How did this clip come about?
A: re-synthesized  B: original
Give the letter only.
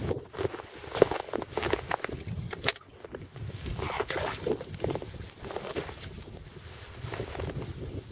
B